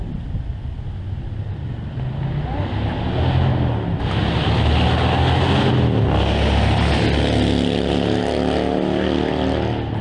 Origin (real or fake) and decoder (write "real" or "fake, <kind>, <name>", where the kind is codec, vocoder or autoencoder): real